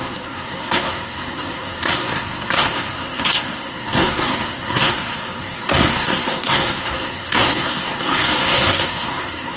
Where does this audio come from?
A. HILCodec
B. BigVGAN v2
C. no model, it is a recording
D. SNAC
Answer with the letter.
D